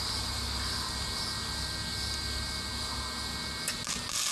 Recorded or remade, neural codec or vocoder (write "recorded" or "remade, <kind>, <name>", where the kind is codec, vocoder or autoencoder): recorded